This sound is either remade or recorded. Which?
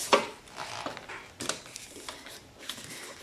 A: recorded